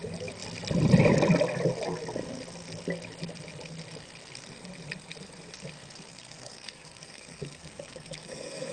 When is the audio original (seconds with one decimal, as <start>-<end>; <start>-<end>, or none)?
0.0-6.1